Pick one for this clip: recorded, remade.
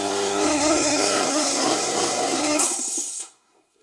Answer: remade